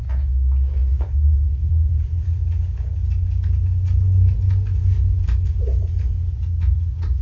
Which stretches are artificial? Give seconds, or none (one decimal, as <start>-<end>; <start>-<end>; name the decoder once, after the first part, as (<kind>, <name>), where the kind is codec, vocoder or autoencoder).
0.8-2.4 (vocoder, BigVGAN v2)